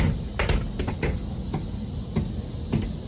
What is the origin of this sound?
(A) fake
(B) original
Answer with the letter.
B